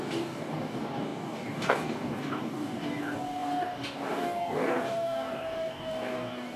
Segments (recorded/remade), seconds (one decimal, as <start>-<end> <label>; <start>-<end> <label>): 0.0-6.6 remade

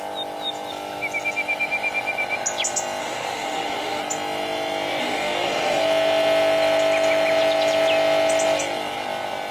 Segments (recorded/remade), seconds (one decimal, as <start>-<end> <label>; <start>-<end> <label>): 0.0-3.0 recorded; 3.0-4.0 remade; 4.0-5.0 recorded; 5.0-5.8 remade; 5.8-9.5 recorded